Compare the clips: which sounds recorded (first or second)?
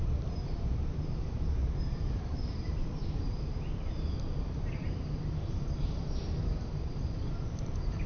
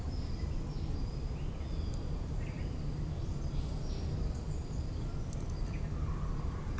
second